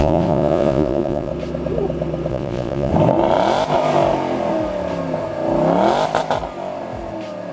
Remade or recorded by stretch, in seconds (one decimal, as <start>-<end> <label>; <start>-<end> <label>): 0.0-1.3 remade; 1.3-2.3 recorded; 2.3-2.9 remade; 2.9-7.5 recorded